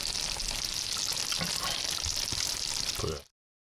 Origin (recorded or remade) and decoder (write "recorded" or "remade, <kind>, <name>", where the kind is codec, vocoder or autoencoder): remade, vocoder, BigVGAN v2